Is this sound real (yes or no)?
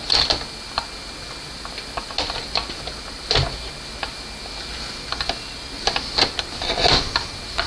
yes